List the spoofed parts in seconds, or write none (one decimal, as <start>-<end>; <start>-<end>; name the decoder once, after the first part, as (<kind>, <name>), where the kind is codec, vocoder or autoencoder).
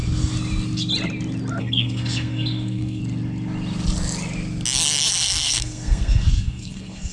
1.6-3.0 (codec, SNAC); 5.1-7.1